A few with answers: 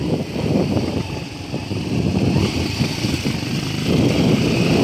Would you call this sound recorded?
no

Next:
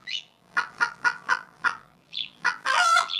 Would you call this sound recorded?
no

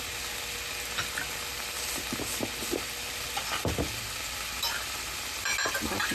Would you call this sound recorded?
yes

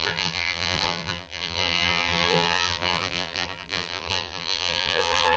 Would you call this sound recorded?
no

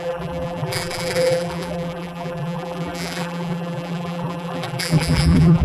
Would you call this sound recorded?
no